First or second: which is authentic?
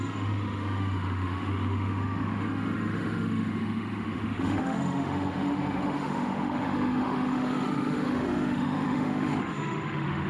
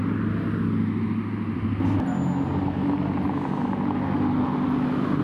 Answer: second